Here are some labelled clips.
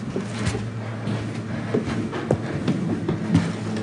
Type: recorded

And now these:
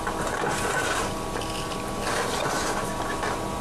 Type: recorded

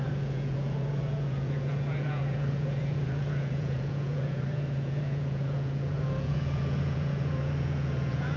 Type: remade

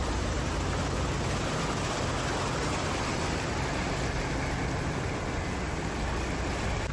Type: recorded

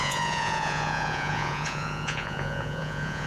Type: remade